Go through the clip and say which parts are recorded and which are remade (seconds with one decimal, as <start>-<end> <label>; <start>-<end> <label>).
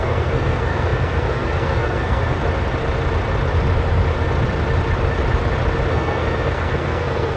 0.0-2.4 remade; 2.4-5.9 recorded; 5.9-7.4 remade